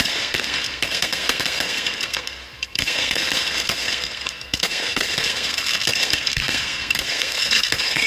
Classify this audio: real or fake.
fake